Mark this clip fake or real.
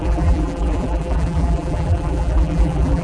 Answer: fake